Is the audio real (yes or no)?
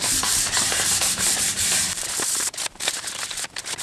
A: no